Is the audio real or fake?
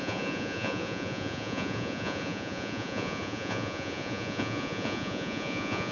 fake